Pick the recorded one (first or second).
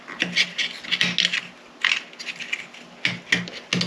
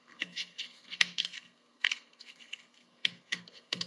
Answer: first